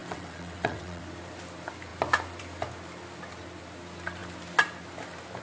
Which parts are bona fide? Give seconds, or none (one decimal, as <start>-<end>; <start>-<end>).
1.0-5.4